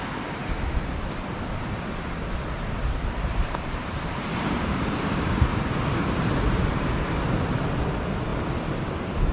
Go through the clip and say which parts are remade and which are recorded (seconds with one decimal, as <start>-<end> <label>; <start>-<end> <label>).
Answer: 0.0-2.8 recorded; 2.8-7.6 remade; 7.6-9.3 recorded